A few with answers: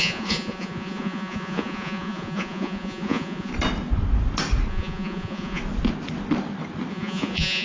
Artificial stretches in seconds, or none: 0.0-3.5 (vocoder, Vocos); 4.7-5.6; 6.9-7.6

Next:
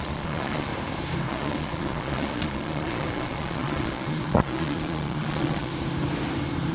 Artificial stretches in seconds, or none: 0.0-0.7 (vocoder, Vocos); 1.3-5.7

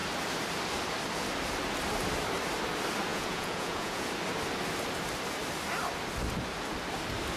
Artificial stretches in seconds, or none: 3.1-4.1 (vocoder, Vocos)

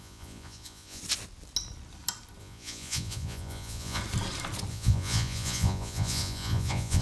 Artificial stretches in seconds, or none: 0.0-1.0 (vocoder, Vocos); 2.4-4.0; 4.7-7.0